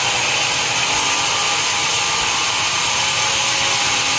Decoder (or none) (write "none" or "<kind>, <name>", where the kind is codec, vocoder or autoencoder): none